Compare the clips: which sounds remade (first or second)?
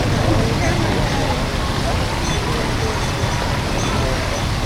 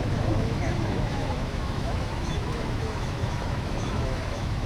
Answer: second